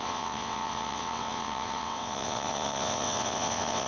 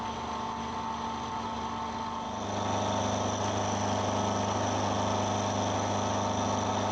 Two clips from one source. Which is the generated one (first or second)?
first